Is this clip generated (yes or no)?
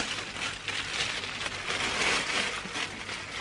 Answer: no